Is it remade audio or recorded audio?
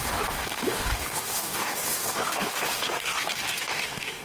remade